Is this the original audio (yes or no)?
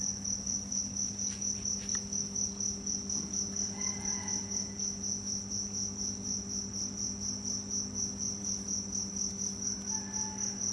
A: yes